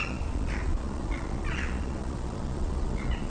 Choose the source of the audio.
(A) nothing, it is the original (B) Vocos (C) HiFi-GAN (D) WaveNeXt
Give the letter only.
B